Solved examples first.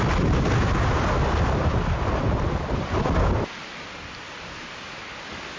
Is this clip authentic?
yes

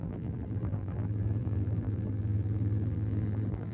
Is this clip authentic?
no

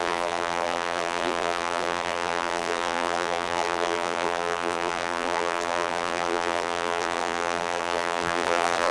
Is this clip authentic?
no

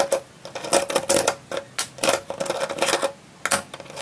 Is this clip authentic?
yes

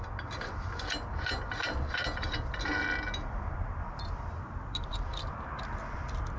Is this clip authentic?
yes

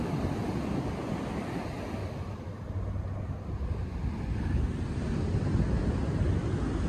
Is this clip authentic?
yes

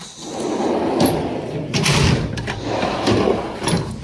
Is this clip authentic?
yes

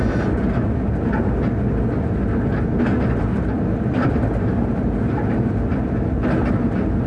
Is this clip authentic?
yes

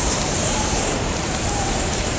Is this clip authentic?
no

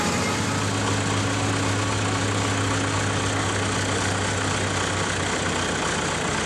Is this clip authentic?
yes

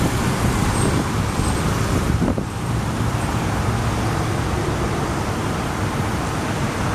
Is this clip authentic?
no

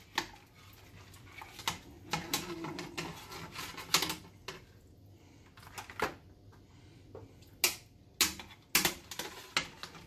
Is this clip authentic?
yes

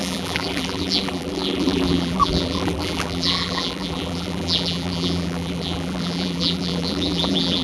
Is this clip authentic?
no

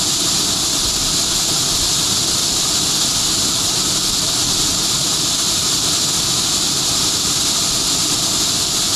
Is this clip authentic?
yes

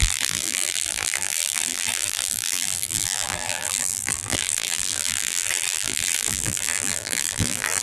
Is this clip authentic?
no